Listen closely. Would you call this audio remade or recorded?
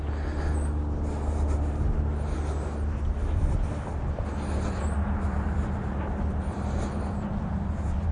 recorded